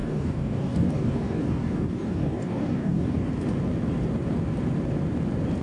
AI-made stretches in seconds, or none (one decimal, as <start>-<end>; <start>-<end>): 0.0-3.3